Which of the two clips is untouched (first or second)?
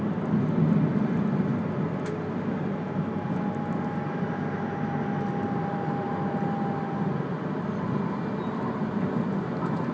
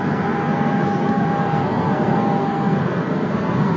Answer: first